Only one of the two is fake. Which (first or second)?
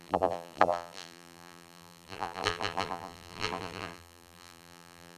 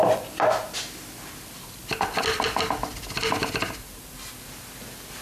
first